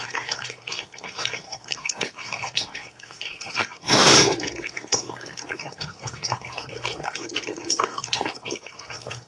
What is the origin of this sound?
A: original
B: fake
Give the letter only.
B